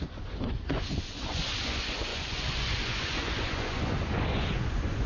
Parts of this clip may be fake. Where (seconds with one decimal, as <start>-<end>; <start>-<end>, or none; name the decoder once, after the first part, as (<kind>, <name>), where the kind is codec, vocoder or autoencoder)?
0.0-5.1 (vocoder, Vocos)